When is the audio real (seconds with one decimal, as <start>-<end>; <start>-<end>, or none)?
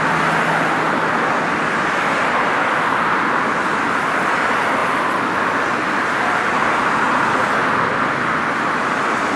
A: 0.0-9.4